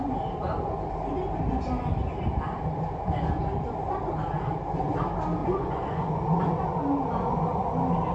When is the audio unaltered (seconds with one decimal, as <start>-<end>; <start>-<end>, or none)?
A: 0.0-5.4; 6.1-8.1